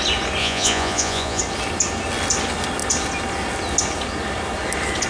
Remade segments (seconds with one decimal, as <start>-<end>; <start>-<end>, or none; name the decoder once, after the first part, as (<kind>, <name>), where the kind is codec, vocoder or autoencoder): 0.4-1.4 (vocoder, Vocos)